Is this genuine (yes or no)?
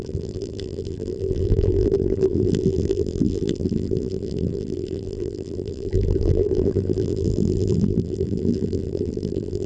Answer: no